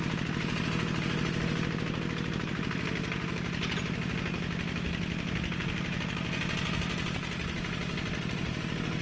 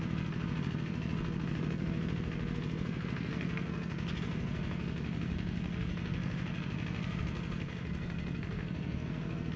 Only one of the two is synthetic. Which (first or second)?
second